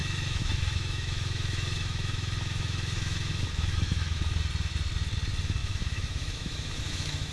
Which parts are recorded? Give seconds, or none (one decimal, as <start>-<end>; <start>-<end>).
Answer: 4.4-5.6